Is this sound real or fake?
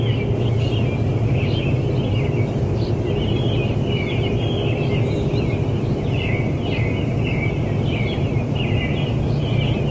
real